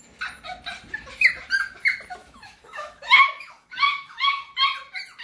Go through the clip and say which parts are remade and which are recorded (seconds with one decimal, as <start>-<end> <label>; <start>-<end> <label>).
0.0-2.2 recorded; 2.2-4.4 remade; 4.4-5.2 recorded